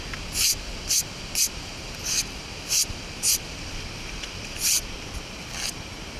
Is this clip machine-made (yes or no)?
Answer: no